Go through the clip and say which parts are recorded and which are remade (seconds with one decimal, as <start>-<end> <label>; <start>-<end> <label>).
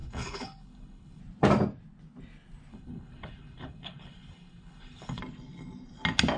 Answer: 0.0-1.2 remade; 1.2-2.7 recorded; 2.7-5.2 remade; 5.2-6.4 recorded